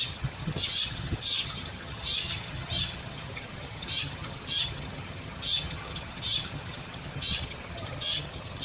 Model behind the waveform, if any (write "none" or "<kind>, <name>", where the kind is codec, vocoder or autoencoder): vocoder, HiFi-GAN